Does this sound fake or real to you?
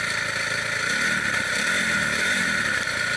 real